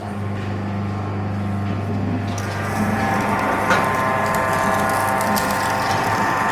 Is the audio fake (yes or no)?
no